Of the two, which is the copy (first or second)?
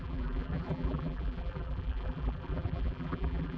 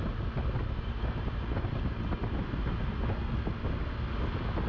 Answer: first